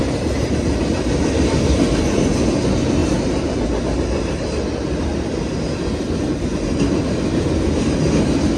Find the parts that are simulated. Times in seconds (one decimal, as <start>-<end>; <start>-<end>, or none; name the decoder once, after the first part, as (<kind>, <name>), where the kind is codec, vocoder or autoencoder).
0.0-0.6 (vocoder, BigVGAN v2); 3.0-3.6